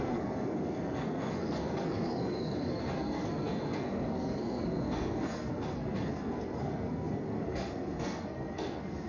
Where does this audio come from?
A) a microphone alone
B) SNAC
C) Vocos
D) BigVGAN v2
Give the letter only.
B